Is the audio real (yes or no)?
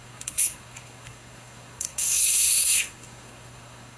no